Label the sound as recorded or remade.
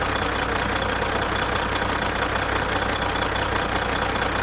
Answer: recorded